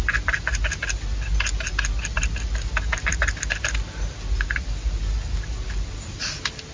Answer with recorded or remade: recorded